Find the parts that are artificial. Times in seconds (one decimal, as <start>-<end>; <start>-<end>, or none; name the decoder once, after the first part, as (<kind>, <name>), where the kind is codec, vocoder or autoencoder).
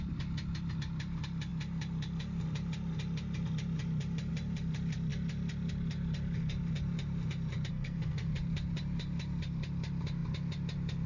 7.7-8.3 (codec, SNAC)